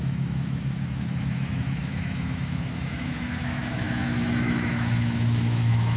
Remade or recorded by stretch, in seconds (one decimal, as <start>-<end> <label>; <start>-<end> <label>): 0.0-6.0 remade